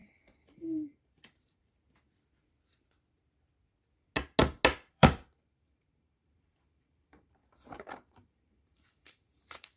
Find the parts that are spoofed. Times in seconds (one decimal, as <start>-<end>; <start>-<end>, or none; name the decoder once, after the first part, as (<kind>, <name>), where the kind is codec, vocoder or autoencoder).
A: 0.0-1.7 (vocoder, BigVGAN v2); 4.9-9.8